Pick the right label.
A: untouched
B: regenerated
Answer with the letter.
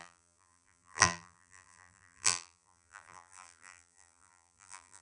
B